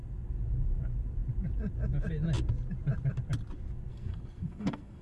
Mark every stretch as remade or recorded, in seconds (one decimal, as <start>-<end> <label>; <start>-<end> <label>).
0.0-3.9 recorded; 3.9-5.0 remade